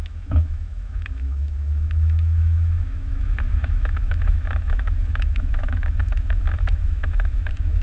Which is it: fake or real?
fake